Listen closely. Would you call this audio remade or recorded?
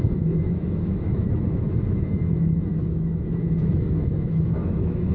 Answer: remade